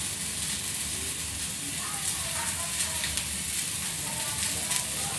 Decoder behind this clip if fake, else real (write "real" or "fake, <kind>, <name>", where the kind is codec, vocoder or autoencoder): real